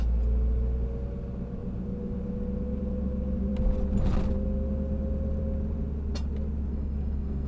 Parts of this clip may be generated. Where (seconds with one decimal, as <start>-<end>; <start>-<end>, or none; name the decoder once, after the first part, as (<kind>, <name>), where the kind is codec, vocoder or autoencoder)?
6.7-7.5 (codec, SNAC)